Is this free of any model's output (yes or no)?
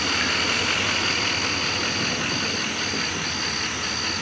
yes